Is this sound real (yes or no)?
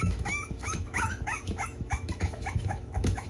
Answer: no